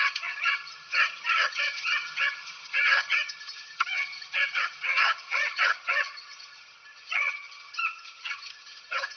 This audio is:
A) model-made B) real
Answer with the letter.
A